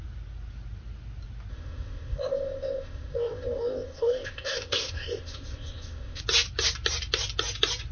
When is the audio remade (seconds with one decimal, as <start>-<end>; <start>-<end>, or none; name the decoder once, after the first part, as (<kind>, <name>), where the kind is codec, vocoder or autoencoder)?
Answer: 1.5-6.2 (codec, ZipCodec)